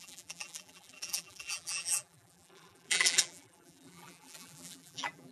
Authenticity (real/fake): fake